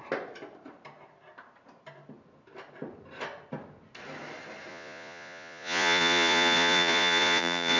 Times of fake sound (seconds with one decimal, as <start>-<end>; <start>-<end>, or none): 4.7-7.8